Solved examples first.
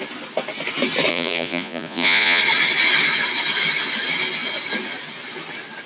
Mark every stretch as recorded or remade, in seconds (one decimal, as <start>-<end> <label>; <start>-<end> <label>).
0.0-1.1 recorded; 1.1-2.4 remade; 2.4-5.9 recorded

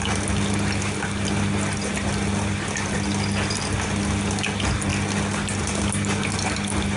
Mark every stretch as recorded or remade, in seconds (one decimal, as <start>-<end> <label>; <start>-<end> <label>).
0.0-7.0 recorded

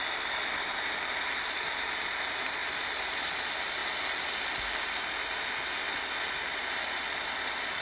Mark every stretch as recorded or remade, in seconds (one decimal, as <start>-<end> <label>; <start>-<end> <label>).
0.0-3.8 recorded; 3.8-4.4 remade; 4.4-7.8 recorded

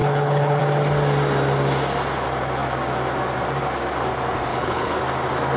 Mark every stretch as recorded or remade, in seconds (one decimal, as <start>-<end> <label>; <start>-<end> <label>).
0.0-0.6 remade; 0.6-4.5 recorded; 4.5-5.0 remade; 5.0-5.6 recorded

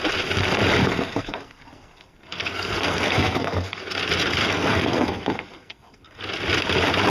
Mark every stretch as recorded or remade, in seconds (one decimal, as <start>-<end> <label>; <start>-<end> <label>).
0.0-0.8 recorded; 0.8-3.9 remade; 3.9-4.4 recorded; 4.4-6.2 remade; 6.2-7.1 recorded

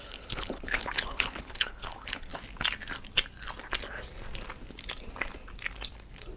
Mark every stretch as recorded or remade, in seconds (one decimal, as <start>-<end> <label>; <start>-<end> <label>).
0.0-2.3 remade; 2.3-6.4 recorded

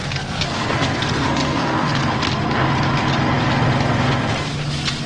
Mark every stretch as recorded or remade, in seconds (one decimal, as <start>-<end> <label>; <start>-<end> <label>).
0.0-2.0 remade; 2.0-5.1 recorded